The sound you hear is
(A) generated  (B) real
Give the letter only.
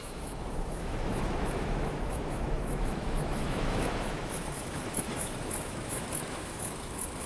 A